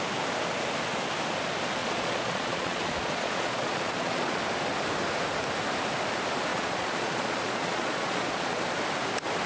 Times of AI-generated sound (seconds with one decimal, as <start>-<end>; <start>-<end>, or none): 1.8-4.4; 6.5-8.6

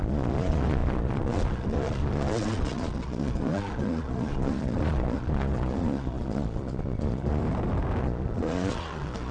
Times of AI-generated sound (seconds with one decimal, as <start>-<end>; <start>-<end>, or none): 0.0-7.4; 8.0-9.3

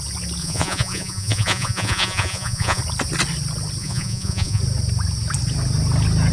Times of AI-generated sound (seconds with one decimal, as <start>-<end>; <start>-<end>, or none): 0.4-2.8; 3.8-4.6

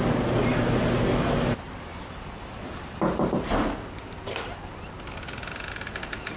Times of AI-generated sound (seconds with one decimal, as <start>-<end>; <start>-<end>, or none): none